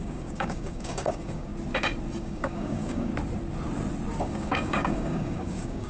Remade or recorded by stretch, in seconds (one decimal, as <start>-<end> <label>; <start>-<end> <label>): 0.0-1.5 remade; 1.5-2.2 recorded; 2.2-3.1 remade; 3.1-4.2 recorded; 4.2-5.9 remade